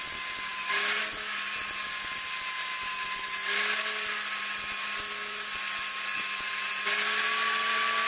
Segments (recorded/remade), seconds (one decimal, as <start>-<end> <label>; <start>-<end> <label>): 0.0-8.1 recorded